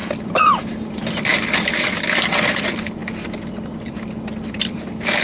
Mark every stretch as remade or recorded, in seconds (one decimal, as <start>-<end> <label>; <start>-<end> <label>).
0.0-5.2 recorded